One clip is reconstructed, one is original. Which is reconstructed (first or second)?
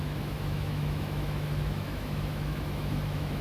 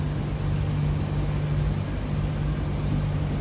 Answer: first